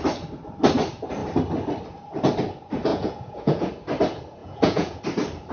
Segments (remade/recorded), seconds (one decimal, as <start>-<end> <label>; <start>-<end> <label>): 0.0-2.9 recorded; 2.9-3.7 remade; 3.7-4.4 recorded; 4.4-5.0 remade; 5.0-5.5 recorded